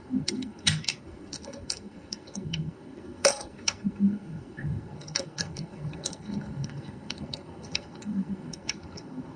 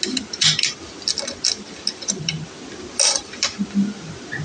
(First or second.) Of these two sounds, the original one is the second